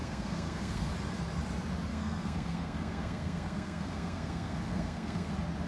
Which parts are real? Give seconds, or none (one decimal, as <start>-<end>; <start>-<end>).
0.9-1.9; 5.3-5.7